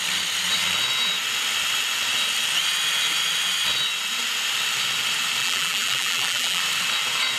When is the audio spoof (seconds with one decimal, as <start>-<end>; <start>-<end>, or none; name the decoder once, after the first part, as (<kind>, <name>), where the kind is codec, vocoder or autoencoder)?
5.4-6.6 (vocoder, BigVGAN v2)